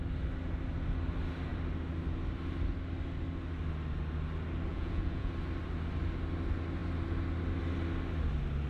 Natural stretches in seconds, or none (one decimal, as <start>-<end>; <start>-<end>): 0.0-4.7; 5.3-8.7